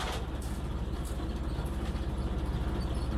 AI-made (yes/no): no